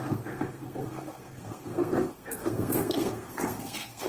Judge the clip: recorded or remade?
remade